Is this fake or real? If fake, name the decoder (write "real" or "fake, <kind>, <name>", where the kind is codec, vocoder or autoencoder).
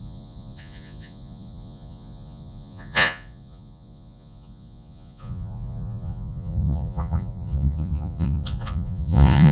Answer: fake, vocoder, Vocos